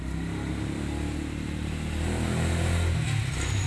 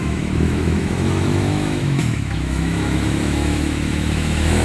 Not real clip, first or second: second